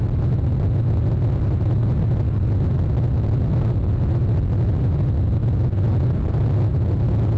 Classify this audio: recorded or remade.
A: recorded